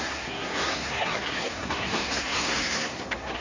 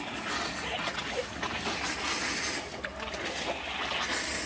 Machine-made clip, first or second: first